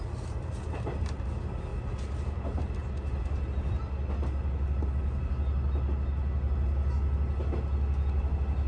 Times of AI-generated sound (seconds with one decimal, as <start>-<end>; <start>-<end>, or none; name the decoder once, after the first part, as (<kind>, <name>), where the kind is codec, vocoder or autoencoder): none